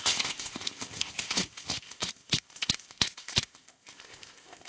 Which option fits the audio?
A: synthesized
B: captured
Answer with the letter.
A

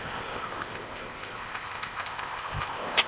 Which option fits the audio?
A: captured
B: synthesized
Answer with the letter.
B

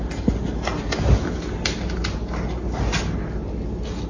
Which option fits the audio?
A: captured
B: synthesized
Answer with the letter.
A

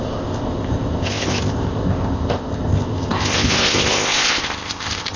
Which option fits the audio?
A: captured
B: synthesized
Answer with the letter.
B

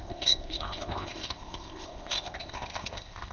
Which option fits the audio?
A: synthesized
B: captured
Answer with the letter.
A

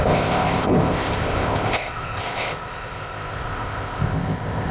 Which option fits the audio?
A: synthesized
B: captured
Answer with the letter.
A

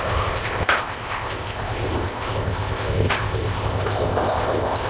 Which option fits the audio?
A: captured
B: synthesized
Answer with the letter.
B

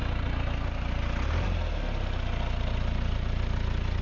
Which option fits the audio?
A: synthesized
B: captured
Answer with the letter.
B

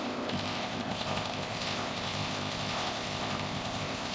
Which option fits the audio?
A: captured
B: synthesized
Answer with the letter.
B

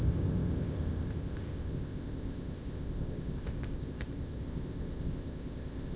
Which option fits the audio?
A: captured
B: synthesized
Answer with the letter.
B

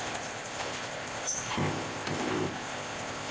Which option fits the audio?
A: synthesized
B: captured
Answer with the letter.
A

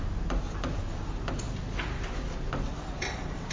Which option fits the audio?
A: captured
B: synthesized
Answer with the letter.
A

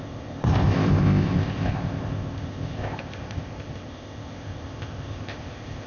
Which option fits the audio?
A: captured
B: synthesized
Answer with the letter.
B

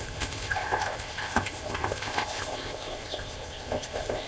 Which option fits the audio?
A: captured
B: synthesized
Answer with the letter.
B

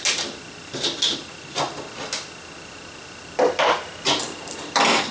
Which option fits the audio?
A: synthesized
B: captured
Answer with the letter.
B